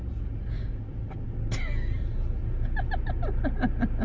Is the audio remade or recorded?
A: recorded